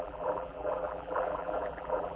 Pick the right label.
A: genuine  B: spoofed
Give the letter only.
B